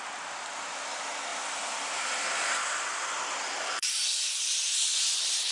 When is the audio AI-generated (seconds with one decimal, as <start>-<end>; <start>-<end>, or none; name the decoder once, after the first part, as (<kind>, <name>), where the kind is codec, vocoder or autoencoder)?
1.3-4.4 (vocoder, BigVGAN v2)